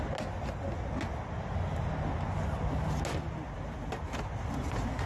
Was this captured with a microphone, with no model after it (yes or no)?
yes